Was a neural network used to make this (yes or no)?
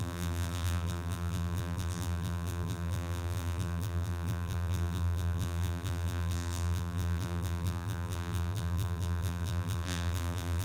yes